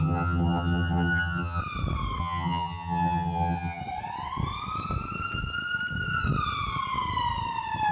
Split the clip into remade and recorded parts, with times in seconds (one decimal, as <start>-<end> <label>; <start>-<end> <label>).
0.0-1.6 remade; 1.6-2.2 recorded; 2.2-3.8 remade; 3.8-7.9 recorded